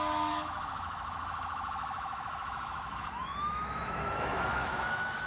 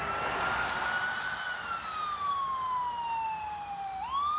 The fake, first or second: first